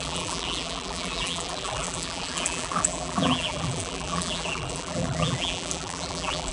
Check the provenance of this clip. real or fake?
fake